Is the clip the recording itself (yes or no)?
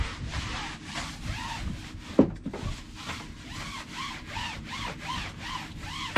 yes